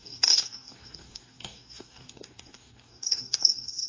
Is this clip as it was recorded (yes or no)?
no